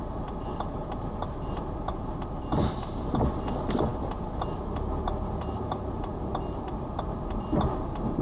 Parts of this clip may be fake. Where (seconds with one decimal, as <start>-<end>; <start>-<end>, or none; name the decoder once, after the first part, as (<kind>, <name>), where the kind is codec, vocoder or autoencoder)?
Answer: none